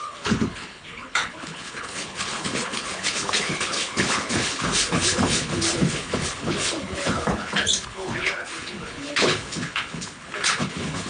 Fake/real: fake